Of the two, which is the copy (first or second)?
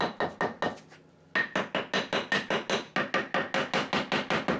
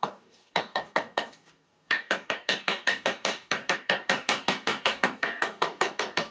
second